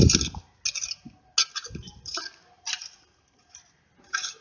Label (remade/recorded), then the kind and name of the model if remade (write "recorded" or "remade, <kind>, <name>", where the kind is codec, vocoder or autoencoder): recorded